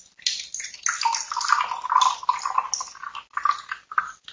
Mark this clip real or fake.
real